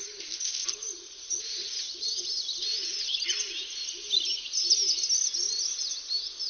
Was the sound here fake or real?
real